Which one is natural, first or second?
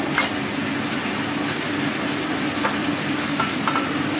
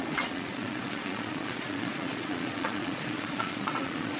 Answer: first